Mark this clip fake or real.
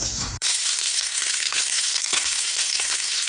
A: fake